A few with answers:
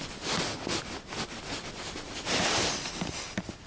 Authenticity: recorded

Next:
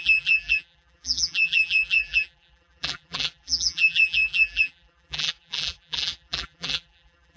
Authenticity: remade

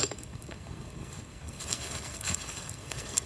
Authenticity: remade